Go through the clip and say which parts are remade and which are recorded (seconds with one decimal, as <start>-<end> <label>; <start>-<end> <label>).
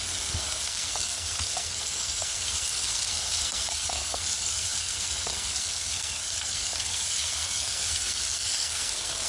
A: 0.0-9.3 remade